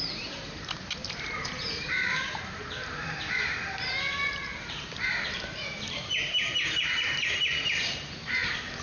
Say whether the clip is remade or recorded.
remade